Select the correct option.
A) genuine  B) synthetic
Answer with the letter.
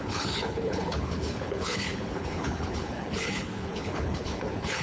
B